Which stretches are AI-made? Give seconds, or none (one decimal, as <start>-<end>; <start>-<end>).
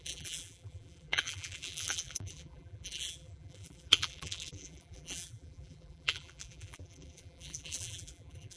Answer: 0.0-8.6